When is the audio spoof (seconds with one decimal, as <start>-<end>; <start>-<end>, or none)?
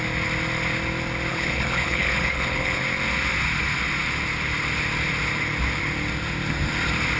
1.3-2.8